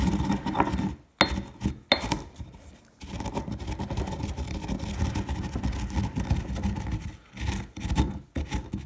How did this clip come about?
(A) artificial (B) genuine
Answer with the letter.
B